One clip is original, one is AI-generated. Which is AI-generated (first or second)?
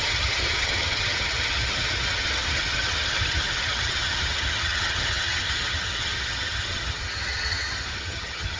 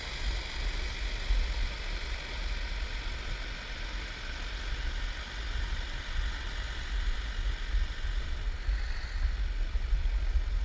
first